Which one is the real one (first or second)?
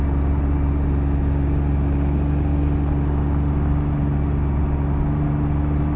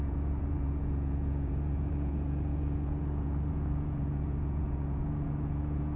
first